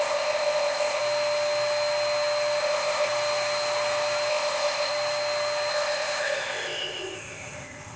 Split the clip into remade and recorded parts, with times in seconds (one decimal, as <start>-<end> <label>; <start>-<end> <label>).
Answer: 0.0-1.0 remade; 1.0-2.6 recorded; 2.6-3.1 remade; 3.1-4.3 recorded; 4.3-4.9 remade; 4.9-5.7 recorded; 5.7-8.0 remade